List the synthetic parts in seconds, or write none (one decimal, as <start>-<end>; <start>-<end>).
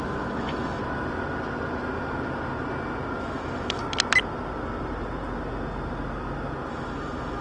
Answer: 0.0-0.8; 3.2-3.8; 6.7-7.4